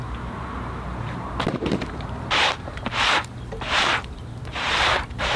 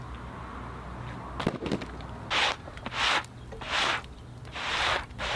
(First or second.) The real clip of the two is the second